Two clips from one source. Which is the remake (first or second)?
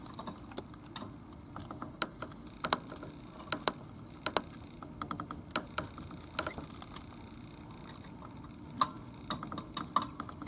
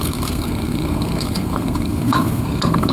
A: second